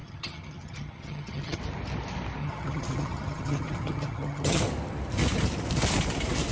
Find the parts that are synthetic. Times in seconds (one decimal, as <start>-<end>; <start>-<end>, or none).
0.0-1.6; 2.4-4.6

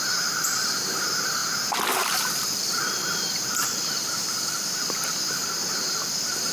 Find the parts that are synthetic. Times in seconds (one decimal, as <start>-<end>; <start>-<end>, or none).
none